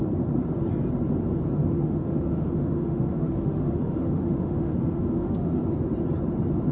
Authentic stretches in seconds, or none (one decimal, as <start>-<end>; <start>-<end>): 0.0-1.6; 5.6-6.7